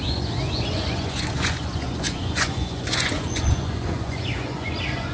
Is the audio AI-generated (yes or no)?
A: yes